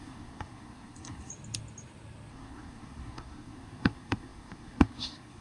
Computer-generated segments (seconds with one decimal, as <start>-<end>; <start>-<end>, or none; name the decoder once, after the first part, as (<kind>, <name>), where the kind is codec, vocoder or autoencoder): 0.0-1.3 (codec, SNAC); 2.3-5.4